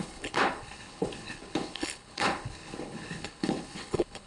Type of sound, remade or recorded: remade